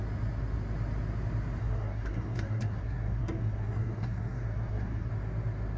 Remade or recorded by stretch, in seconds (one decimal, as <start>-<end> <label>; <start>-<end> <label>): 0.0-1.6 recorded; 1.6-5.1 remade; 5.1-5.8 recorded